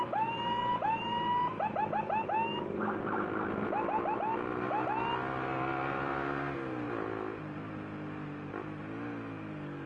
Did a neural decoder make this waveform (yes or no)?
no